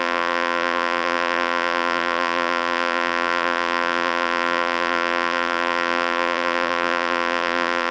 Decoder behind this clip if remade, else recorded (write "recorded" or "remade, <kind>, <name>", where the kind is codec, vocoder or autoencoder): remade, vocoder, BigVGAN v2